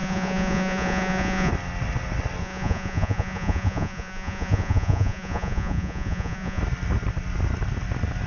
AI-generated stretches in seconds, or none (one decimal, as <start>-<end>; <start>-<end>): 0.0-1.5; 2.4-6.6